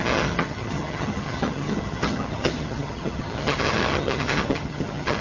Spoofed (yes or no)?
yes